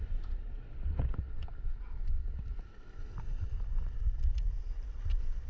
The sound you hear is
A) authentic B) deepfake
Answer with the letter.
A